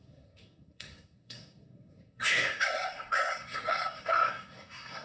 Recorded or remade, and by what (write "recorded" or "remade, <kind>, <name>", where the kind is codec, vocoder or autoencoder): remade, codec, SNAC